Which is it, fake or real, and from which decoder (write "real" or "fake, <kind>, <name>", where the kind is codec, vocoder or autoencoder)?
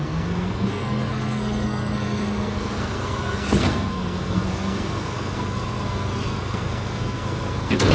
fake, codec, SNAC